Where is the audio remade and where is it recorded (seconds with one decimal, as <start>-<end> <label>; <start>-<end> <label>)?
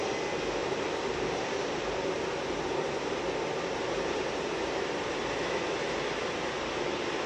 0.0-0.6 recorded; 0.6-5.0 remade; 5.0-7.3 recorded